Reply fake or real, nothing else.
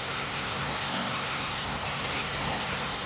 fake